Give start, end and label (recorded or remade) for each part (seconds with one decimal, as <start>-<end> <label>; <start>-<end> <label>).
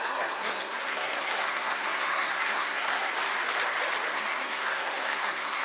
0.0-3.1 remade; 3.1-4.1 recorded; 4.1-5.6 remade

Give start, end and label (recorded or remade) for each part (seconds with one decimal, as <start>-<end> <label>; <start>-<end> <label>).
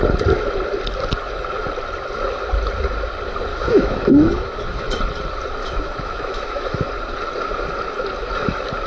0.0-3.5 recorded; 3.5-4.9 remade; 4.9-5.6 recorded; 5.6-6.9 remade; 6.9-8.9 recorded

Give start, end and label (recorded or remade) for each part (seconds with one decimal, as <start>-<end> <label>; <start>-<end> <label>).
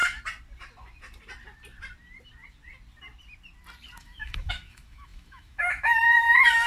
0.0-4.0 recorded; 4.0-6.7 remade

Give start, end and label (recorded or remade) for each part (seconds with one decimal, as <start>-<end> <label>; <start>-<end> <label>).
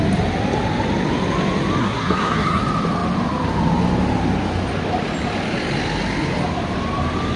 0.0-1.8 recorded; 1.8-2.6 remade; 2.6-7.4 recorded